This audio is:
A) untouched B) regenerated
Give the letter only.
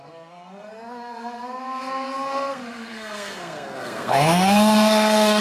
B